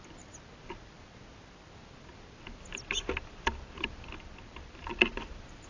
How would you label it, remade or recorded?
recorded